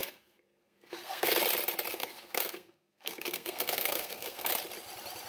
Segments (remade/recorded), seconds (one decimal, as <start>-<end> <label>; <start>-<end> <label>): 0.0-1.4 remade; 1.4-1.9 recorded; 1.9-4.5 remade; 4.5-5.3 recorded